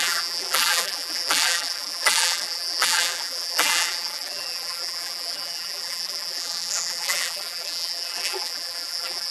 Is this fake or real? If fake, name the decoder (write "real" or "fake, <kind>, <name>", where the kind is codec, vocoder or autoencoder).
fake, vocoder, BigVGAN v2